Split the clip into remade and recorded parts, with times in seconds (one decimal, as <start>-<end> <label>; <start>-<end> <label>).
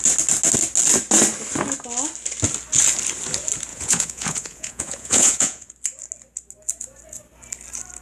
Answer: 0.0-3.7 recorded; 3.7-5.7 remade; 5.7-8.0 recorded